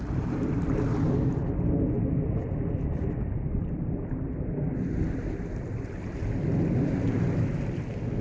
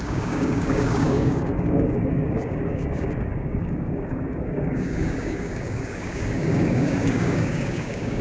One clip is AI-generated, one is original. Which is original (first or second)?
first